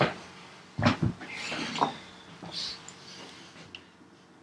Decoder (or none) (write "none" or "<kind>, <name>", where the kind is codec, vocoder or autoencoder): none